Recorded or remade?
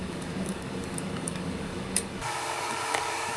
remade